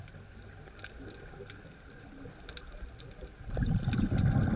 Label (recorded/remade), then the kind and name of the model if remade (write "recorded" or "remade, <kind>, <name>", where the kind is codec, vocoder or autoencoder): recorded